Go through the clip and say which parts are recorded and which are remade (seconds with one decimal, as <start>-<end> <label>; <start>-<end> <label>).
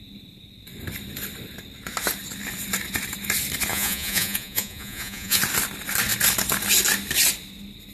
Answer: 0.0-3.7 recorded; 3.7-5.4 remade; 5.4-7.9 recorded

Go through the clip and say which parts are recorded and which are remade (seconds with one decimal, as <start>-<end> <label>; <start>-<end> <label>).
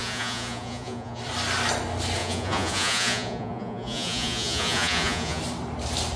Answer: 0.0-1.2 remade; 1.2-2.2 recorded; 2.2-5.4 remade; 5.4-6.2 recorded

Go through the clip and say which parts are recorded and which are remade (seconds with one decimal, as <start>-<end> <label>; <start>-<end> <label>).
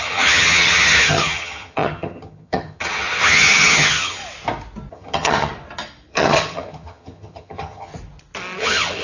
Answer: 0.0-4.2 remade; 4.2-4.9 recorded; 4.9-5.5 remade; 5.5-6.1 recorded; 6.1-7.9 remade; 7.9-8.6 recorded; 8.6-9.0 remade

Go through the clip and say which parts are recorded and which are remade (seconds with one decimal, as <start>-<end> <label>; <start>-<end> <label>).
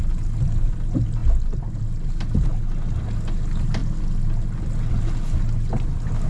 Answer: 0.0-6.3 recorded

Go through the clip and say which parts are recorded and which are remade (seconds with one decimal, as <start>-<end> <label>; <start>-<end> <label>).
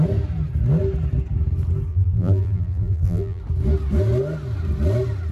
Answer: 0.0-1.9 recorded; 1.9-3.4 remade; 3.4-5.3 recorded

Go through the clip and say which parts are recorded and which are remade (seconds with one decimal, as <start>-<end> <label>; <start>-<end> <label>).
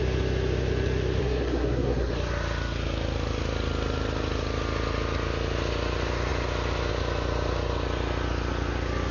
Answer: 0.0-1.2 recorded; 1.2-2.1 remade; 2.1-9.1 recorded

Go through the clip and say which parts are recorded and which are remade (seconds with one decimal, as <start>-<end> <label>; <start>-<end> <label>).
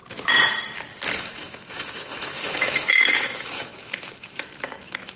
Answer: 0.0-1.2 recorded; 1.2-5.2 remade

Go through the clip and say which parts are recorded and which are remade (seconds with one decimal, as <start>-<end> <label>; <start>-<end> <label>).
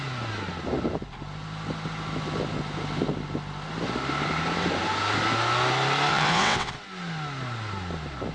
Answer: 0.0-6.1 recorded; 6.1-6.7 remade; 6.7-8.3 recorded